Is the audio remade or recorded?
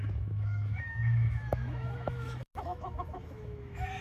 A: remade